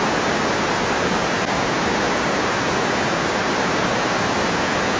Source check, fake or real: real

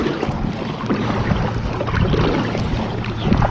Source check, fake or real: real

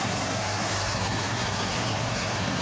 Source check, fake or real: fake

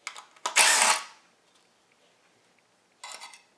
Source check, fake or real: real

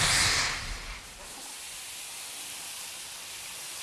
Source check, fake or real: real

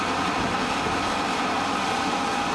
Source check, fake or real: real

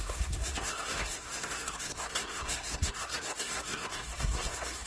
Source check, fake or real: fake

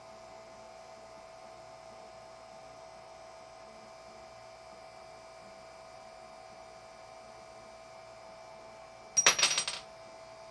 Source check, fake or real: real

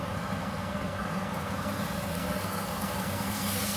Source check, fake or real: fake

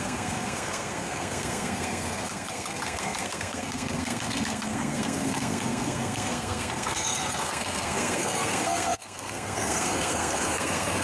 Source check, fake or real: fake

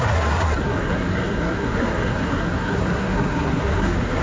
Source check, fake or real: fake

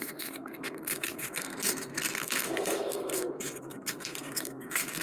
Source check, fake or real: fake